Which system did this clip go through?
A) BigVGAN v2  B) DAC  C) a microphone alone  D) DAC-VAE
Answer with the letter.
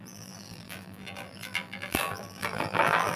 A